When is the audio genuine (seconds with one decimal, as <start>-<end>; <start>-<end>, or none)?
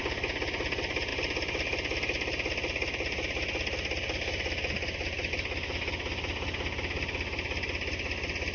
0.0-8.5